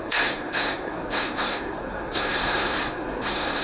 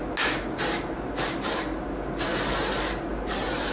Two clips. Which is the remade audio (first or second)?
first